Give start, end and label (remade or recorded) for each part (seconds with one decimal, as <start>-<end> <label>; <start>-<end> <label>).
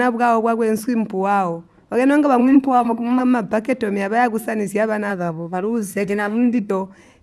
0.0-2.4 recorded; 2.4-3.2 remade; 3.2-5.1 recorded; 5.1-6.7 remade; 6.7-7.2 recorded